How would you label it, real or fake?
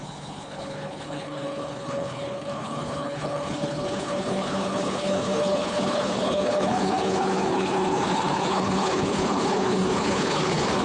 fake